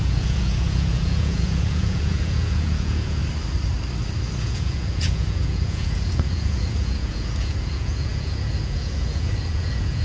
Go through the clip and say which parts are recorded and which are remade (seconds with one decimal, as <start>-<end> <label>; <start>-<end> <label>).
0.0-3.2 remade; 3.2-4.4 recorded; 4.4-10.0 remade